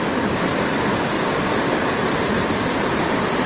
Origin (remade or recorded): recorded